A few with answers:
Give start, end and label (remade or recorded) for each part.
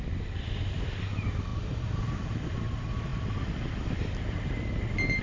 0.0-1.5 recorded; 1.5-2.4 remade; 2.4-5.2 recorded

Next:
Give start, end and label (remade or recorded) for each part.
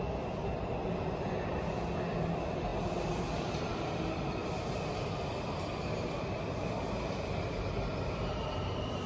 0.0-9.1 recorded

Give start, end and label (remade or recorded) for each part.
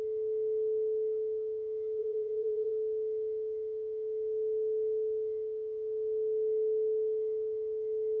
0.0-2.0 recorded; 2.0-2.7 remade; 2.7-8.2 recorded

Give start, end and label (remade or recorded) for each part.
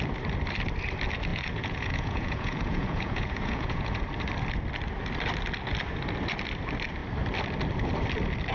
0.0-1.3 recorded; 1.3-4.0 remade; 4.0-8.5 recorded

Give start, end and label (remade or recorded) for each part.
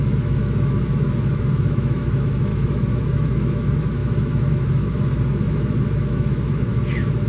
0.0-7.3 remade